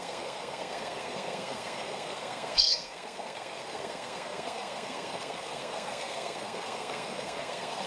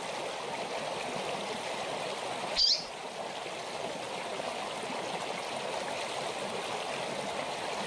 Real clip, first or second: second